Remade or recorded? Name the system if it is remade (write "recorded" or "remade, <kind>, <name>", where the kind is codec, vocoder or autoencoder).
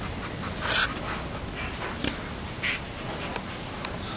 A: recorded